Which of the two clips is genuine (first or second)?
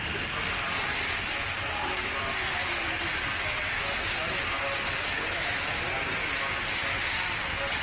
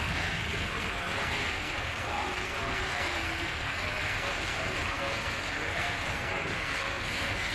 first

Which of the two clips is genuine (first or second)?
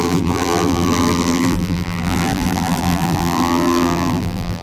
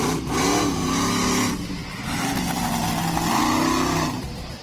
second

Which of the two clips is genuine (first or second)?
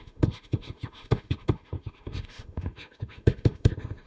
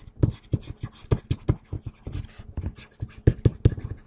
second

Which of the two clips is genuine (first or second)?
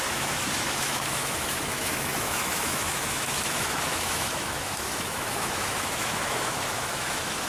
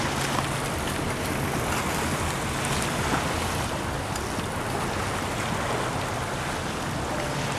second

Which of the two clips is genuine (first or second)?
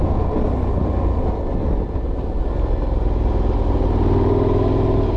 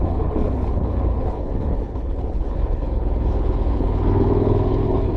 first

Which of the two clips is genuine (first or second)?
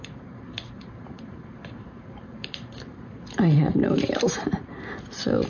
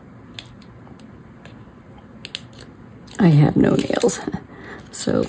second